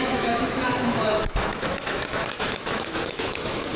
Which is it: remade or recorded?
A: remade